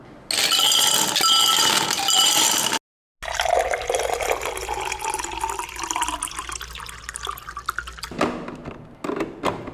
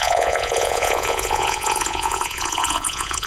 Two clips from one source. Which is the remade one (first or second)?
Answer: second